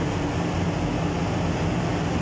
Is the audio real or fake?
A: real